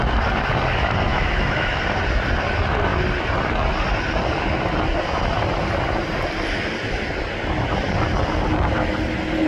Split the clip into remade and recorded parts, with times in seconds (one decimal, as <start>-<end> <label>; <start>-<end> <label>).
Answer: 0.0-1.1 recorded; 1.1-1.8 remade; 1.8-9.5 recorded